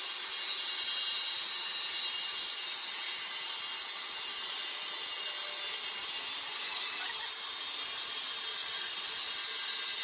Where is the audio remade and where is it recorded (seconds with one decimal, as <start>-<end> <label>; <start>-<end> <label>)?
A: 0.0-6.7 recorded; 6.7-7.2 remade; 7.2-8.6 recorded; 8.6-9.3 remade; 9.3-10.0 recorded